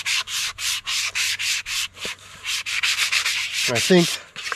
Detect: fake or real fake